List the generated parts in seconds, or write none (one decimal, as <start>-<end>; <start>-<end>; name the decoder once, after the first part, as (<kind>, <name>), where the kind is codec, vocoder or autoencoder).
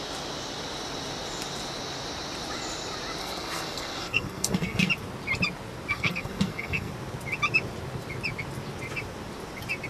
3.2-4.9 (codec, SNAC); 5.9-6.9